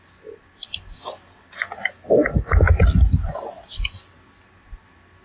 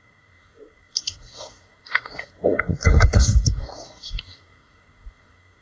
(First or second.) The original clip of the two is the first